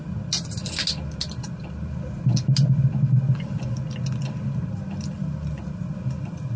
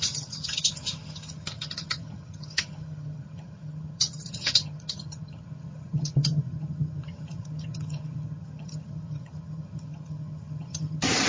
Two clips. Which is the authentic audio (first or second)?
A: first